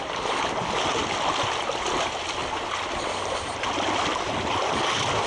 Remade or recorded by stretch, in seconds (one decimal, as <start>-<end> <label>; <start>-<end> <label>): 0.0-5.3 recorded